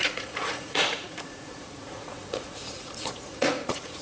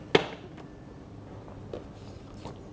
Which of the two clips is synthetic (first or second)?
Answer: first